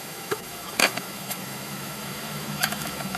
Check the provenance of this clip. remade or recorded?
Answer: remade